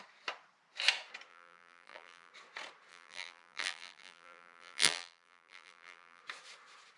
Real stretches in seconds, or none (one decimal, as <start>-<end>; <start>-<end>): 0.0-1.3; 2.3-2.9; 6.2-7.0